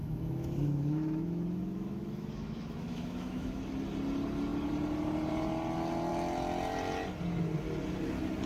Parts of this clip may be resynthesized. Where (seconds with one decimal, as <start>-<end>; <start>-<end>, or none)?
0.0-3.6